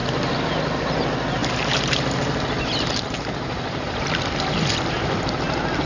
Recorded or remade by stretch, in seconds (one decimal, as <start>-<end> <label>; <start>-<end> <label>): 0.0-0.5 remade; 0.5-1.4 recorded; 1.4-4.1 remade; 4.1-5.9 recorded